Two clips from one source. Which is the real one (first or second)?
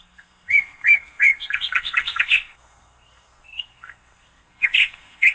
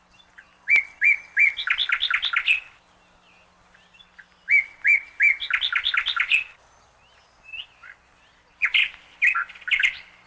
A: second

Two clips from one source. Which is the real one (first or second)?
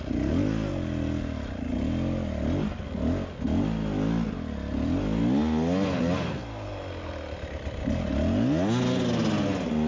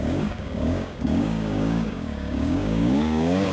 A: first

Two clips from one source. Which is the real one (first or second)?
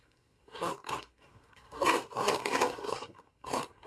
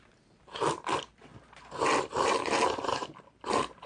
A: second